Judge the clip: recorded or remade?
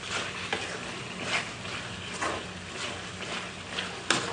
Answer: recorded